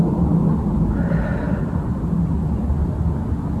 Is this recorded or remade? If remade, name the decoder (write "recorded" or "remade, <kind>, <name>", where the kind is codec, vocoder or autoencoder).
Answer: recorded